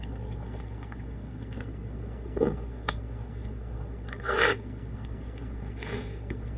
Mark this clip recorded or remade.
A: remade